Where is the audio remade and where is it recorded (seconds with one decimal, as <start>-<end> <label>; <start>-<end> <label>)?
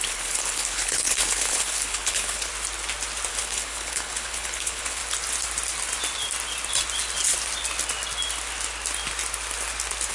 0.0-2.5 remade; 2.5-3.3 recorded; 3.3-5.0 remade; 5.0-10.1 recorded